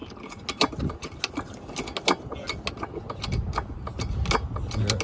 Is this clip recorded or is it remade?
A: recorded